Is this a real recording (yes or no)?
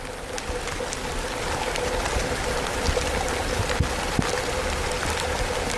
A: yes